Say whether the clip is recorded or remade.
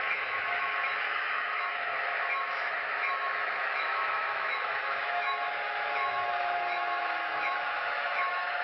remade